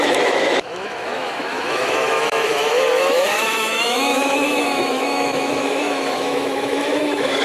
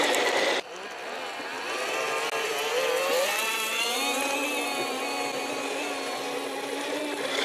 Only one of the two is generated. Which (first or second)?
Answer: first